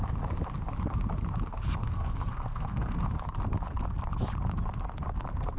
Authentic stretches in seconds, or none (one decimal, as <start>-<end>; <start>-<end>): 0.0-1.8; 3.1-5.6